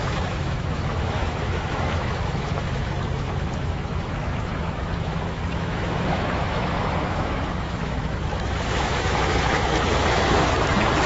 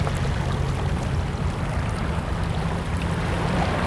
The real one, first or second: second